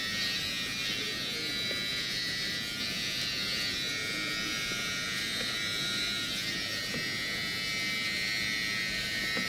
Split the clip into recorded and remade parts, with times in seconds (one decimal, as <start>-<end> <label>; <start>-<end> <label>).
0.0-9.5 recorded